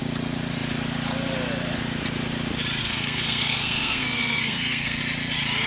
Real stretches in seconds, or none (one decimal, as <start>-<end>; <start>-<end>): 0.0-2.8; 5.0-5.7